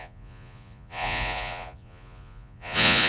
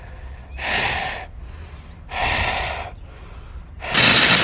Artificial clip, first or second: first